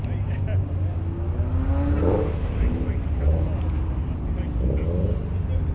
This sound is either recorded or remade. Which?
recorded